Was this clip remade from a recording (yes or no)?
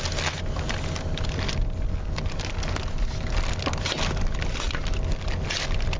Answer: no